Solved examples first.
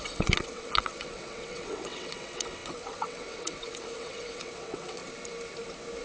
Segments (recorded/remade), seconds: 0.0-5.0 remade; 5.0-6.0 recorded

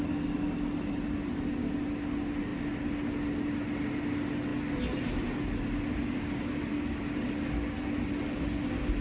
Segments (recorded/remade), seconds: 0.0-9.0 recorded

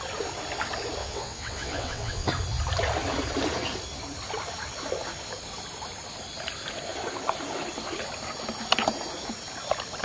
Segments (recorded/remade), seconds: 0.0-1.0 recorded; 1.0-2.3 remade; 2.3-10.0 recorded

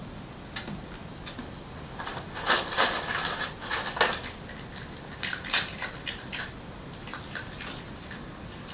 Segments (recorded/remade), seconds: 0.0-8.7 recorded

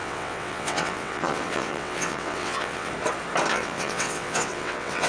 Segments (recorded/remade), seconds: 0.0-2.9 remade; 2.9-3.5 recorded; 3.5-5.1 remade

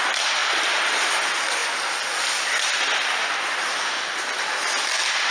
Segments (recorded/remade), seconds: 0.0-5.3 recorded